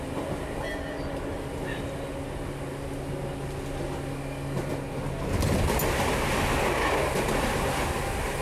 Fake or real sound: real